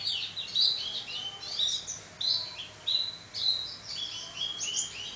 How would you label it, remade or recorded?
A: recorded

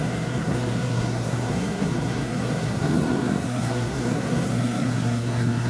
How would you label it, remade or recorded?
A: remade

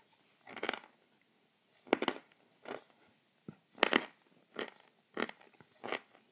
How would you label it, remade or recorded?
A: recorded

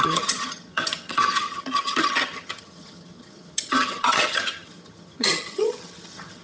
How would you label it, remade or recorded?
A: remade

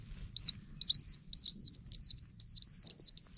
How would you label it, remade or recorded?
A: recorded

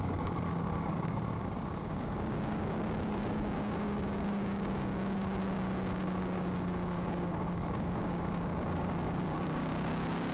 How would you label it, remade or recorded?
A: remade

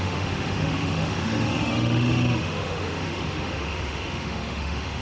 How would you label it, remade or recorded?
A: remade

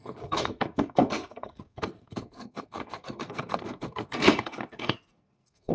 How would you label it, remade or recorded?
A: remade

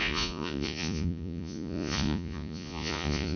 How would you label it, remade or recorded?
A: remade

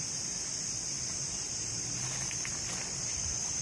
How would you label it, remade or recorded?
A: recorded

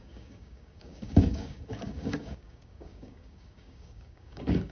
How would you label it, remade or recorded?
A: remade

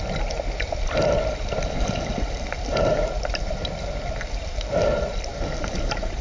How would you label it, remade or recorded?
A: recorded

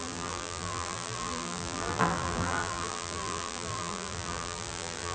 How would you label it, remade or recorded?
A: remade